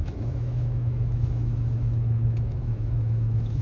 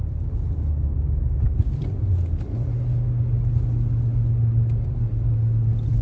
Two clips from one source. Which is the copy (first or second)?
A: first